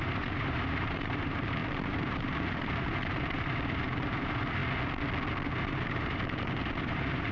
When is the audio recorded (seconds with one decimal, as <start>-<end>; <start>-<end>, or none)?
4.6-5.6